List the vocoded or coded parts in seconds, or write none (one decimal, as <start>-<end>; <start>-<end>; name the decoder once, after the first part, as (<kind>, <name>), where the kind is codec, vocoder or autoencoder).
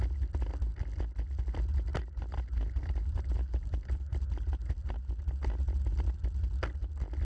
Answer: 1.9-6.2 (vocoder, BigVGAN v2)